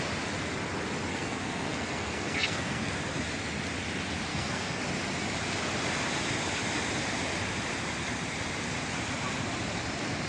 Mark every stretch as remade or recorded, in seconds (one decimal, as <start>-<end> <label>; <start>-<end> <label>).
0.0-1.1 recorded; 1.1-2.9 remade; 2.9-4.3 recorded; 4.3-4.8 remade; 4.8-10.3 recorded